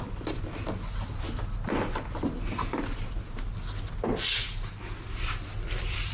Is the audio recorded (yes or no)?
yes